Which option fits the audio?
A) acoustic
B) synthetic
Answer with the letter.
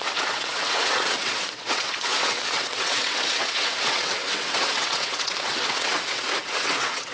B